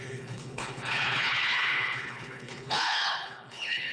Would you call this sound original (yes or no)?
no